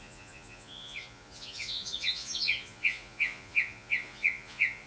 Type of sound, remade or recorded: remade